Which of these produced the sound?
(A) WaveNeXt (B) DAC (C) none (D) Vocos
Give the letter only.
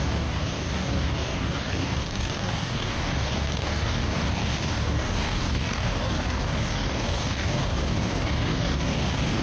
B